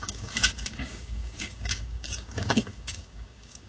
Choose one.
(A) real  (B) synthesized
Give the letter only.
B